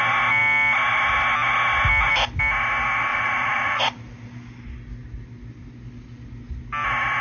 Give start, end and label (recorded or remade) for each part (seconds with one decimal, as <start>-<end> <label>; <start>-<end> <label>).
0.0-3.1 recorded; 3.1-3.8 remade; 3.8-7.2 recorded

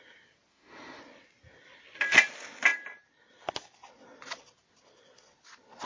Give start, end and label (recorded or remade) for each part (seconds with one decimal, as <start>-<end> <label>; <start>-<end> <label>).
0.0-0.5 recorded; 0.5-1.0 remade; 1.0-5.9 recorded

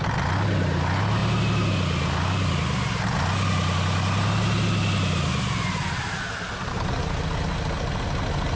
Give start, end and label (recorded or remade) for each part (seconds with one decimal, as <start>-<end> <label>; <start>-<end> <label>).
0.0-8.6 recorded

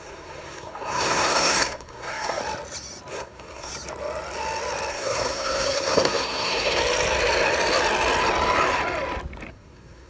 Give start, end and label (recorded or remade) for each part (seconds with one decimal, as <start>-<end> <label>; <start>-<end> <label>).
0.0-2.4 remade; 2.4-3.1 recorded; 3.1-3.7 remade; 3.7-4.9 recorded; 4.9-6.8 remade; 6.8-9.5 recorded; 9.5-10.1 remade

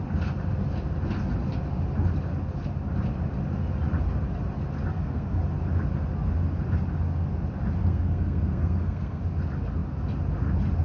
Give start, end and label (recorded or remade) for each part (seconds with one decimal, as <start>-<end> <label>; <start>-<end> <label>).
0.0-4.9 recorded; 4.9-5.4 remade; 5.4-7.8 recorded; 7.8-9.2 remade; 9.2-10.8 recorded

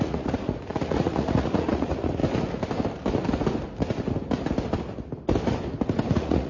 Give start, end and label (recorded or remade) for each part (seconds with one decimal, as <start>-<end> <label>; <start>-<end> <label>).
0.0-2.2 remade; 2.2-6.1 recorded; 6.1-6.5 remade